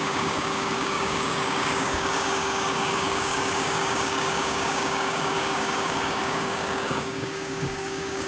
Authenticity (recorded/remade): remade